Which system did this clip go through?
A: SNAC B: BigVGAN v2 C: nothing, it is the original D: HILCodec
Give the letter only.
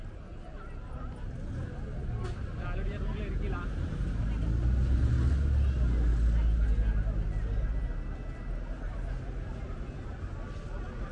C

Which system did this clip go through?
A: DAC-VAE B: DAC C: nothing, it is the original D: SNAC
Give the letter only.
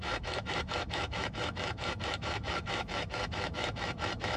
A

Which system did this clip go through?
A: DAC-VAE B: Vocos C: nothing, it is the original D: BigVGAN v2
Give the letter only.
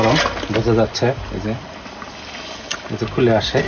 C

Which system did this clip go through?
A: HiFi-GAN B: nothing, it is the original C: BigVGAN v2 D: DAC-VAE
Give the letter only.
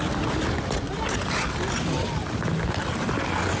B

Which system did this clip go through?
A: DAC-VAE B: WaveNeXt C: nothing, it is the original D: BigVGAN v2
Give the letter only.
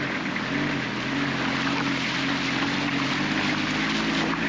C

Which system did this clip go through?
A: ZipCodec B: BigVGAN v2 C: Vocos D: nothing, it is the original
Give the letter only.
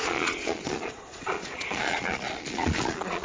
C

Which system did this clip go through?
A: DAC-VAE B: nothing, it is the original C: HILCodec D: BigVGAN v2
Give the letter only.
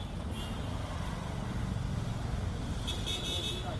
B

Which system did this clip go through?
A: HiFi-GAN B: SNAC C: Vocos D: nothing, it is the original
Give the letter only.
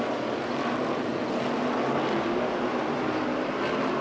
D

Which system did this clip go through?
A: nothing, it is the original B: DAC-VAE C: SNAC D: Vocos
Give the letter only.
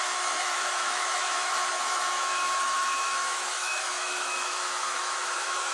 B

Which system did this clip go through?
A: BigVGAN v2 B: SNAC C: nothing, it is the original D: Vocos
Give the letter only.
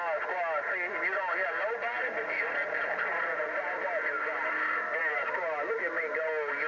C